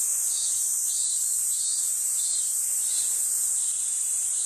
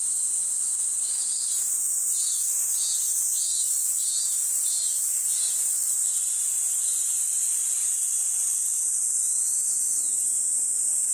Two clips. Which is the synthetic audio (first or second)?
first